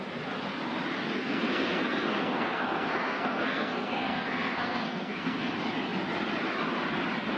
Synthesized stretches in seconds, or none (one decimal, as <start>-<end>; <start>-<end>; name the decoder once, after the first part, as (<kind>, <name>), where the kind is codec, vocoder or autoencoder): 1.2-5.5 (codec, SNAC)